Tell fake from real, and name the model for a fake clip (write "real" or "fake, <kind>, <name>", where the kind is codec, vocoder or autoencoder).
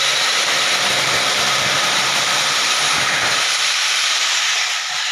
fake, vocoder, BigVGAN v2